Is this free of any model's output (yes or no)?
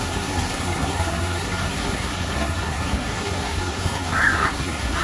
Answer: no